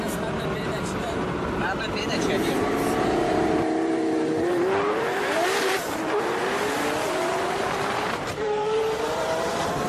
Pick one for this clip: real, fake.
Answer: fake